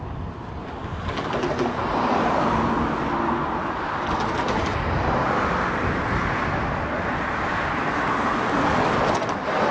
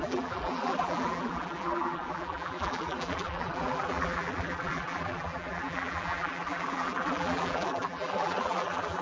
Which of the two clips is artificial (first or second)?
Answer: second